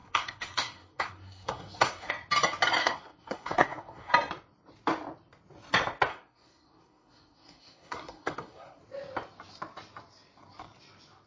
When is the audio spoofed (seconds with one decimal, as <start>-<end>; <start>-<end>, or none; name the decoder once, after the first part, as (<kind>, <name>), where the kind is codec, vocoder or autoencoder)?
0.0-2.1 (codec, SNAC); 2.8-4.1; 6.1-8.8